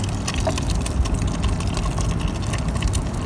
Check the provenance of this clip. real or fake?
real